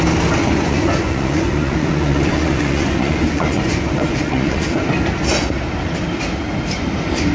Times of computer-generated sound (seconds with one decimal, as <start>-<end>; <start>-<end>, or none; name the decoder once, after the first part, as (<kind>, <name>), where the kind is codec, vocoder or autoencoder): 0.4-4.8 (vocoder, Vocos)